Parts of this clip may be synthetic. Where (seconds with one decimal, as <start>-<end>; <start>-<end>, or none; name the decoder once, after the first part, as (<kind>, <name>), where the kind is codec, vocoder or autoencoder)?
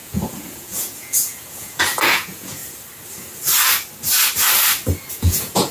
0.0-2.6 (vocoder, Vocos); 5.1-5.7